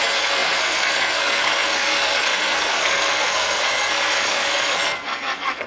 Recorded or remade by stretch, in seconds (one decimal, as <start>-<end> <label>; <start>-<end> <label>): 0.0-5.7 remade

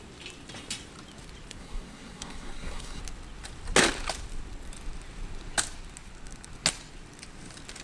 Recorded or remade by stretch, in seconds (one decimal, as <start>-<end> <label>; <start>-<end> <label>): 0.0-1.6 recorded; 1.6-3.0 remade; 3.0-7.8 recorded

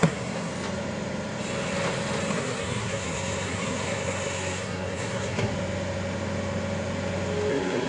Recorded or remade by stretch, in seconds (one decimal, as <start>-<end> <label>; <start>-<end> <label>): 0.0-0.5 remade; 0.5-2.3 recorded; 2.3-5.5 remade; 5.5-7.5 recorded; 7.5-7.9 remade

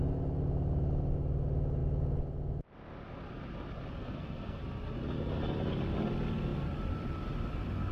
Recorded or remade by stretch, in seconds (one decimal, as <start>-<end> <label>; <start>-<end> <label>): 0.0-4.0 recorded; 4.0-4.6 remade; 4.6-7.9 recorded

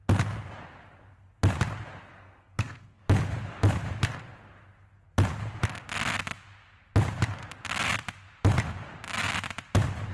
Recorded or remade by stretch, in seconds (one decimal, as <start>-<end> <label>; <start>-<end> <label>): 0.0-2.0 recorded; 2.0-3.0 remade; 3.0-10.1 recorded